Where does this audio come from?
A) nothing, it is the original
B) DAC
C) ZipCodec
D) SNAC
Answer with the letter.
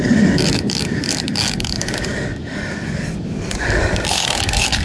B